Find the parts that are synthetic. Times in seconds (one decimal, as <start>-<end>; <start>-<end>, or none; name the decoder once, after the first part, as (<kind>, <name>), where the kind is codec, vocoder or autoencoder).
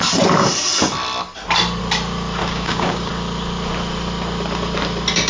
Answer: 2.4-3.1 (codec, DAC)